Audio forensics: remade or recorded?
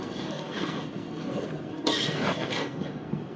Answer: remade